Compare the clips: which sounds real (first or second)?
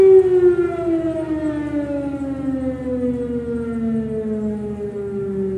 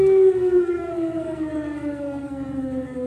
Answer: first